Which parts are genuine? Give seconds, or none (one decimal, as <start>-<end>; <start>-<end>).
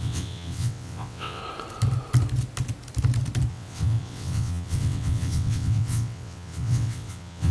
1.4-3.5